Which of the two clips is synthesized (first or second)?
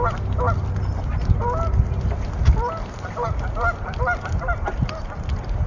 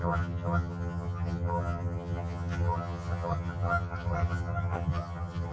second